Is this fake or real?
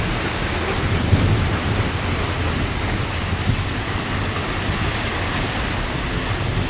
real